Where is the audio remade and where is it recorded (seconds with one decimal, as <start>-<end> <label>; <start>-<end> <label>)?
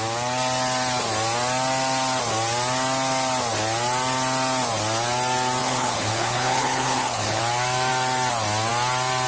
0.0-5.6 recorded; 5.6-7.4 remade; 7.4-9.3 recorded